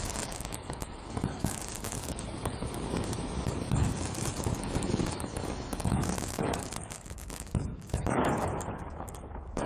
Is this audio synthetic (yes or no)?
yes